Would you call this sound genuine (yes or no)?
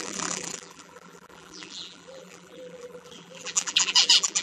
no